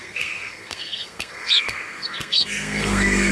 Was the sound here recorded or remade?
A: remade